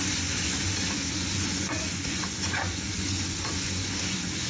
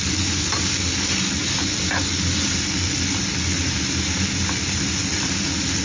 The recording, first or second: second